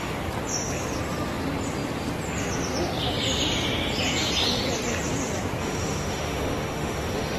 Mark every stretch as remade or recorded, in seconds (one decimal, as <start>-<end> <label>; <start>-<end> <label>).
0.0-5.6 recorded; 5.6-7.4 remade